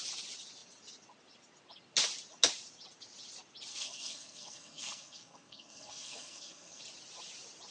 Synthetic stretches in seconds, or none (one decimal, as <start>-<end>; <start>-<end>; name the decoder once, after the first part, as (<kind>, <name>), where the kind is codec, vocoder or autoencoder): 3.7-6.8 (codec, SNAC)